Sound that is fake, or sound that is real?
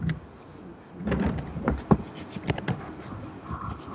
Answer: real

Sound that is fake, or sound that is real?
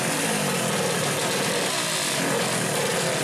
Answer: real